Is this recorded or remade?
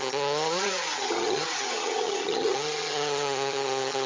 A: remade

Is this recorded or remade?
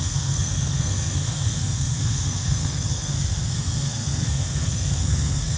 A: remade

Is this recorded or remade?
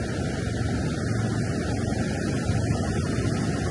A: recorded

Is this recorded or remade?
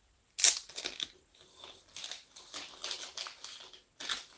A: recorded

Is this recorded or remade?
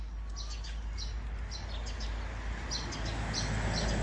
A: recorded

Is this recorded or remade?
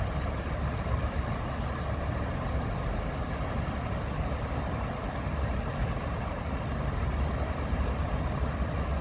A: recorded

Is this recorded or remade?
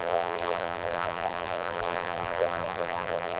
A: remade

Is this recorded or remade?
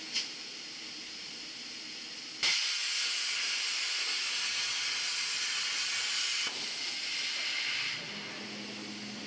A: recorded